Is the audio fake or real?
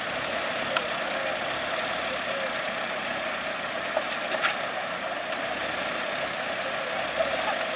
real